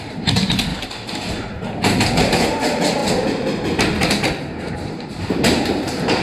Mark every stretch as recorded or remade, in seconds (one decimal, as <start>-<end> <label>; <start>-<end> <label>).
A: 0.0-0.7 remade; 0.7-1.5 recorded; 1.5-3.0 remade; 3.0-4.7 recorded; 4.7-6.2 remade